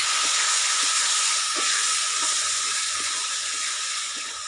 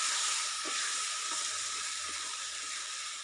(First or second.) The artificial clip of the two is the first